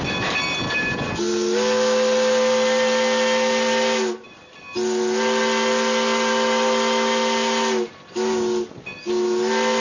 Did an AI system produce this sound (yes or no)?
no